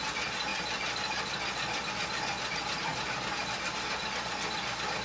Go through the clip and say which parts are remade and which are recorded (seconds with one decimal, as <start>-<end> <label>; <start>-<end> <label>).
0.0-5.0 recorded